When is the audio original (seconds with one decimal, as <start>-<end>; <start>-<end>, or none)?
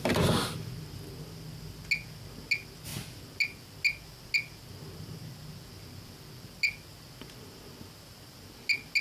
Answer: 0.0-9.0